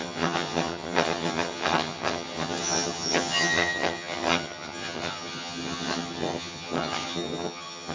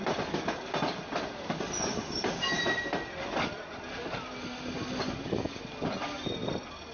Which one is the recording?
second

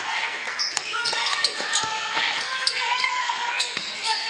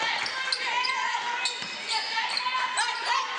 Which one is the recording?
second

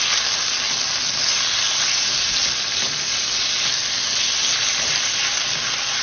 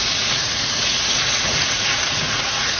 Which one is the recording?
first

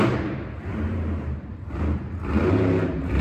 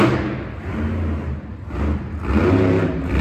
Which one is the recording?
second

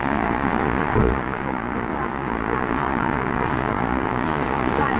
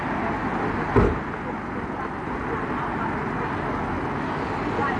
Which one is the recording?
second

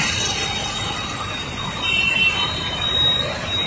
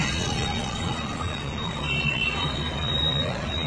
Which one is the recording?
first